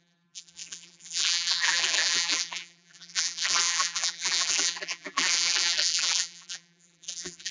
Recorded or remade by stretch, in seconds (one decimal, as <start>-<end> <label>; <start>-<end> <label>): 0.0-7.5 remade